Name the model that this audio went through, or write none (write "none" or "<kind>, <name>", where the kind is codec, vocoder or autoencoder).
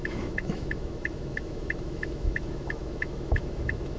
autoencoder, DAC-VAE